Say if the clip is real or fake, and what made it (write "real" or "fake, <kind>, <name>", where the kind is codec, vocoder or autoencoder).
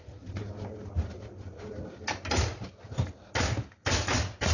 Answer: real